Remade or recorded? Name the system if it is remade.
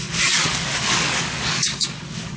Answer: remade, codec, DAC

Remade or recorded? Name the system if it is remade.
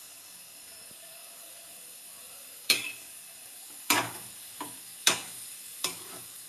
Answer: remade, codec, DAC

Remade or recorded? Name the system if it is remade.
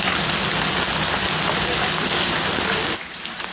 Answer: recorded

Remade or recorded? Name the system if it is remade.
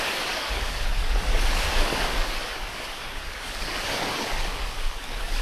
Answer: remade, codec, DAC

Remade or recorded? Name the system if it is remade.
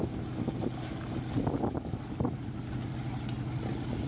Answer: recorded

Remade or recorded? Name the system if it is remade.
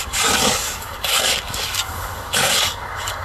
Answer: remade, codec, DAC